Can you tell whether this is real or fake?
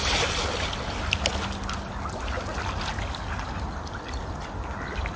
real